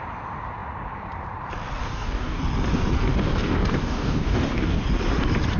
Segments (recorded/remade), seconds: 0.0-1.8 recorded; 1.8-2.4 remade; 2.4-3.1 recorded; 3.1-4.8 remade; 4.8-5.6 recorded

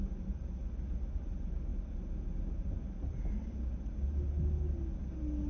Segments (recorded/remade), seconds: 0.0-5.5 recorded

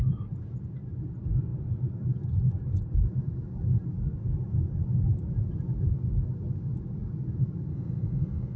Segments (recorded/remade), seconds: 0.0-7.7 recorded; 7.7-8.6 remade

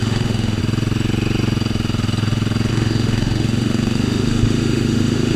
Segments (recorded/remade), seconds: 0.0-0.6 remade; 0.6-2.7 recorded; 2.7-5.4 remade

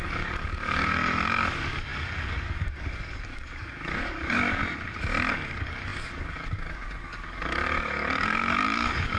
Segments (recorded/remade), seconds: 0.0-4.6 remade; 4.6-5.3 recorded; 5.3-9.2 remade

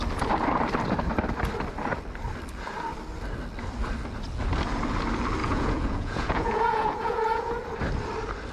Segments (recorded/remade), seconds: 0.0-5.4 recorded; 5.4-7.5 remade; 7.5-8.5 recorded

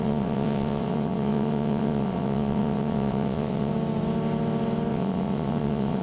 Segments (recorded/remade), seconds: 0.0-3.7 remade; 3.7-4.9 recorded; 4.9-6.0 remade

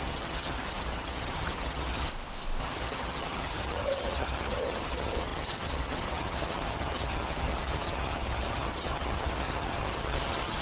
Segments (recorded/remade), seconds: 0.0-2.1 remade; 2.1-2.6 recorded; 2.6-10.6 remade